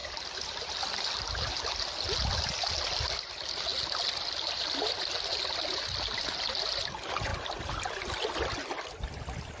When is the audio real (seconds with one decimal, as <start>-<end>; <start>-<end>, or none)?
0.0-9.6